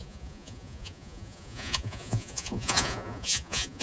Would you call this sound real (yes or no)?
no